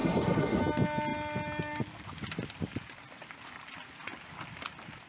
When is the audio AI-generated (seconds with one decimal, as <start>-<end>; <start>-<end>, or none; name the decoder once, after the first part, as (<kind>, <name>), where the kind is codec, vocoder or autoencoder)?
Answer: 0.0-0.6 (codec, SNAC)